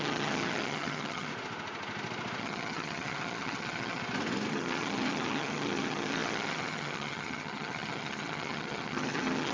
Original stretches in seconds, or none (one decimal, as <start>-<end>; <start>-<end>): 1.3-2.4; 4.0-4.5